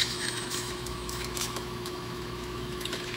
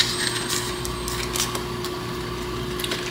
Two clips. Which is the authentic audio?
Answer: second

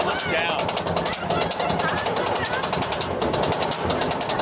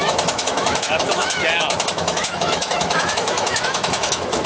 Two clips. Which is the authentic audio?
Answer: first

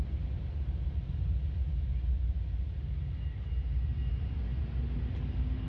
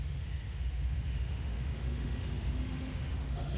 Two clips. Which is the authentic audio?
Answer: first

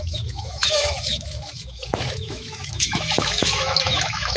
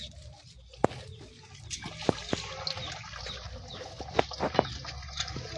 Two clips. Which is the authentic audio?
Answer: second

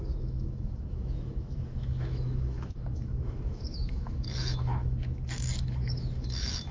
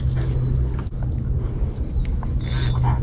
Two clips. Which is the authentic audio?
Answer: second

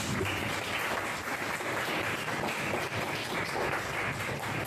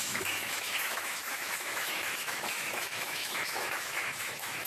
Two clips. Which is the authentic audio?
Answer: first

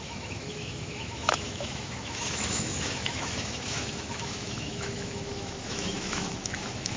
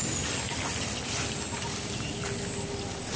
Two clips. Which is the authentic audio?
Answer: second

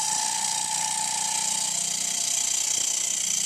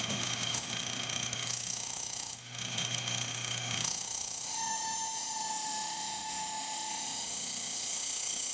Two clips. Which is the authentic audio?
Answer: first